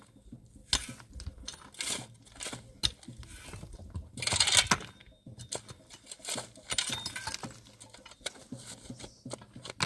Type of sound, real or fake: real